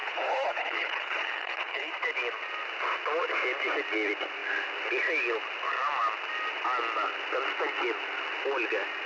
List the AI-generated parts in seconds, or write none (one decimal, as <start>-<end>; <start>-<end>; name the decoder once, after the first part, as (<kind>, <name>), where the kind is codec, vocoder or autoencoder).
0.0-1.9 (codec, HILCodec)